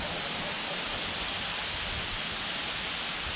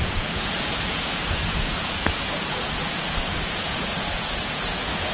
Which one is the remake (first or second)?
second